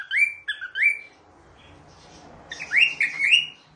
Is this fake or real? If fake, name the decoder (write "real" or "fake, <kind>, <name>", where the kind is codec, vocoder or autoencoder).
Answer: real